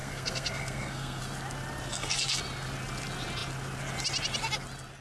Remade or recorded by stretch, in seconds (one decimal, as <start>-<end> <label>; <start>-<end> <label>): 0.0-1.2 remade; 1.2-1.9 recorded; 1.9-2.4 remade; 2.4-5.0 recorded